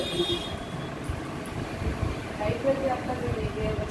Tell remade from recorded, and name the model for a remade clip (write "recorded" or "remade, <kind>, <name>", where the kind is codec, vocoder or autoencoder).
recorded